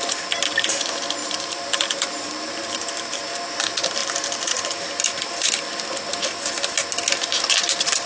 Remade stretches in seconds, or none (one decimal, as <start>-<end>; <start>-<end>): 1.2-3.2